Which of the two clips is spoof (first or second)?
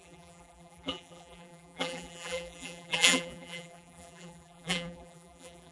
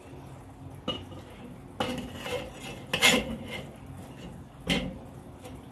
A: first